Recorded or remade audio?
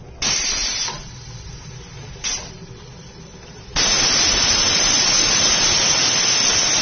recorded